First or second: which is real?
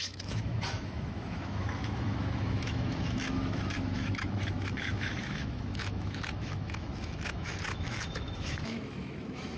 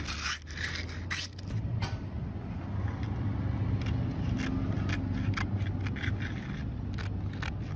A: second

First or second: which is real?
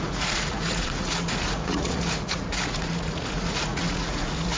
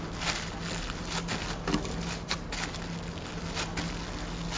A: second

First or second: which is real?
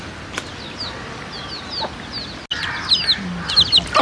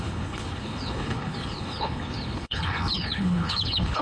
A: first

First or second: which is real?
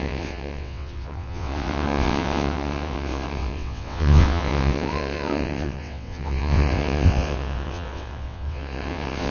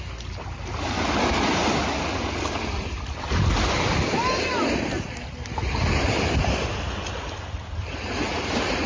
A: second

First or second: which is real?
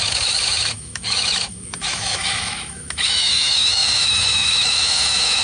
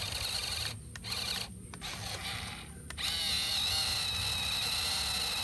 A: second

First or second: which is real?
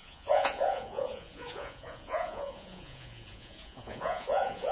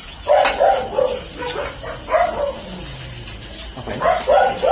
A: second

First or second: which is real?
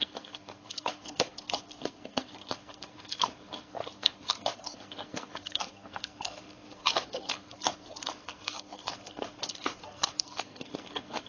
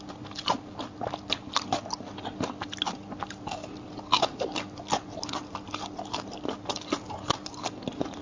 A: second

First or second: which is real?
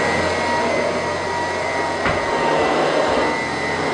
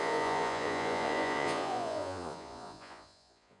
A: first